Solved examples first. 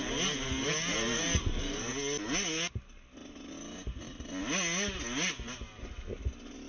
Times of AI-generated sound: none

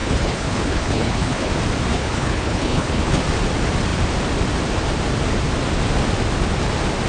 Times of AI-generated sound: 0.0-1.5 (codec, HILCodec); 1.9-3.2

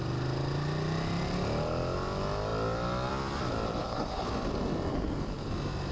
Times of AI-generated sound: 3.8-4.3 (codec, HILCodec); 4.9-5.5